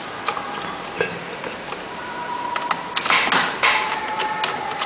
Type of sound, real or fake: real